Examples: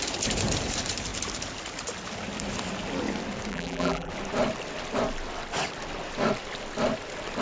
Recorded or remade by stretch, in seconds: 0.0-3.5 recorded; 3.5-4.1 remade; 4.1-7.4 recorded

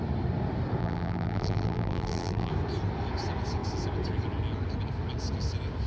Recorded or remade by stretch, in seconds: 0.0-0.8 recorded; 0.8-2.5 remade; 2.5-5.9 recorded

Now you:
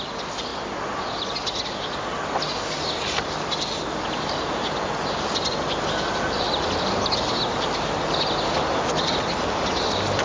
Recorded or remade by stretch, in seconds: 0.0-10.2 recorded